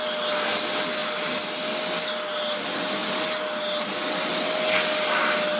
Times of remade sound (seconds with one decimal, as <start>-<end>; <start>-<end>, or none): none